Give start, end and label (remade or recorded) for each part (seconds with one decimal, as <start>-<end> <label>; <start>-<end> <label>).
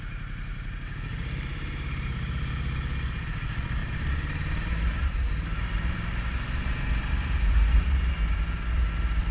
0.0-1.5 recorded; 1.5-2.5 remade; 2.5-3.8 recorded; 3.8-7.8 remade; 7.8-9.3 recorded